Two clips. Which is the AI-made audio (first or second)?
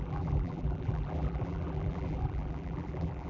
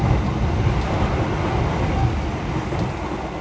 first